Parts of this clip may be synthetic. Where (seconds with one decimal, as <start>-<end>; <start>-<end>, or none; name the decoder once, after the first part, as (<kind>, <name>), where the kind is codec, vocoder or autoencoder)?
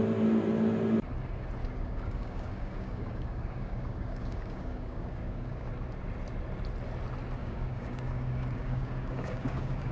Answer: 1.6-5.7 (codec, DAC); 7.4-9.9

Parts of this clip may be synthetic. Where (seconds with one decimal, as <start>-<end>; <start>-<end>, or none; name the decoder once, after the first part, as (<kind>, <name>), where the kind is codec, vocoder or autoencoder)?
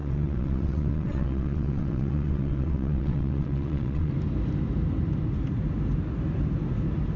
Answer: 0.0-4.1 (vocoder, WaveNeXt)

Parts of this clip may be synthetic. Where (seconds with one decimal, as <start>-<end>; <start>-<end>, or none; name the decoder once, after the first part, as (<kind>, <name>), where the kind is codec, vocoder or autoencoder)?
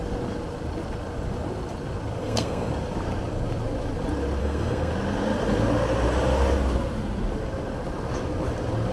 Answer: 2.2-2.7 (codec, SNAC); 4.4-4.9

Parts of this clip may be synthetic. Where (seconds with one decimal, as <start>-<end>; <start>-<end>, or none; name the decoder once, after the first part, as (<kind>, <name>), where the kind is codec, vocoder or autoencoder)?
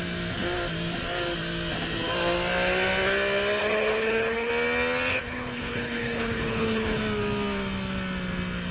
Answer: 3.6-4.5 (codec, HILCodec); 5.1-7.0